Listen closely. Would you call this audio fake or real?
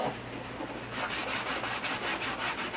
fake